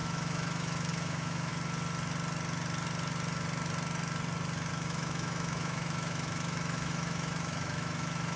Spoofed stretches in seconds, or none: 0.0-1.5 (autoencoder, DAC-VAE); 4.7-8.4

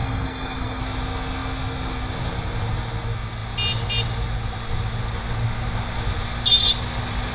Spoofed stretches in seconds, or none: 0.0-0.8 (codec, SNAC)

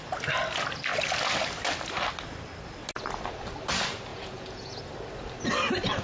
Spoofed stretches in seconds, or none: 4.1-4.8 (vocoder, Vocos)

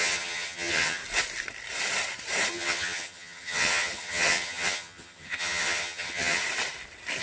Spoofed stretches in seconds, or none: 0.0-1.0 (vocoder, HiFi-GAN); 2.5-6.4

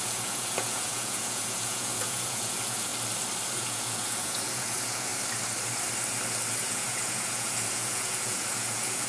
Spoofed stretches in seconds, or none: 0.0-2.9 (vocoder, Vocos); 3.5-5.1; 6.6-9.1

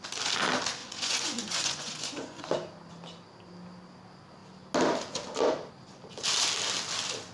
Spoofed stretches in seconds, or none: 0.8-2.4 (vocoder, Vocos)

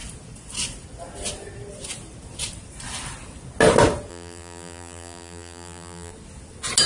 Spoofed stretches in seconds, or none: 4.1-6.1 (vocoder, BigVGAN v2)